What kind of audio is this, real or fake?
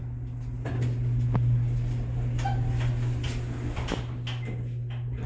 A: real